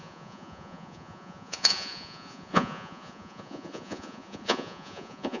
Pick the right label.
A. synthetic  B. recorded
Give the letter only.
A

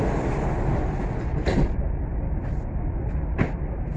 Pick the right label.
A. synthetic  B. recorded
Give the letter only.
B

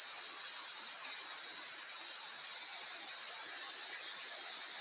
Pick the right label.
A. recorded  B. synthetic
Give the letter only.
A